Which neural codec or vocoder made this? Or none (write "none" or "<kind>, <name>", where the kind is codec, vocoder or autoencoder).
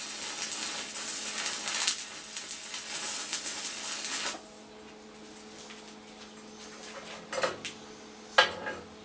none